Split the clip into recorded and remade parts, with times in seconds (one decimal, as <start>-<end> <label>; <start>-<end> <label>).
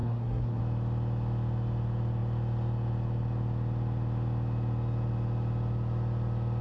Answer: 0.0-0.6 remade; 0.6-6.6 recorded